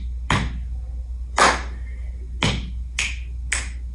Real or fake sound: real